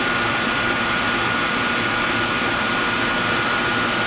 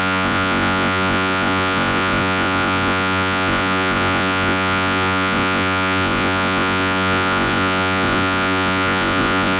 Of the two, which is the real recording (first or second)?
first